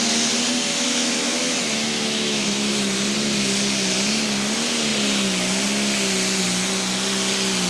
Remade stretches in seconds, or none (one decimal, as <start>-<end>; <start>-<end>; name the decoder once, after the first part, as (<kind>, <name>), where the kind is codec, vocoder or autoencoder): 0.7-2.7 (autoencoder, DAC-VAE)